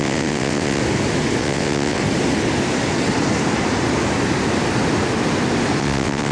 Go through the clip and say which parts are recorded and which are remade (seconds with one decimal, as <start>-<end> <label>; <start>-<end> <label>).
0.0-0.8 remade; 0.8-1.4 recorded; 1.4-2.0 remade; 2.0-5.8 recorded; 5.8-6.3 remade